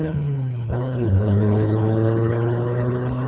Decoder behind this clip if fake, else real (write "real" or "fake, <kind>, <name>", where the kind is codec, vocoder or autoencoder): fake, codec, HILCodec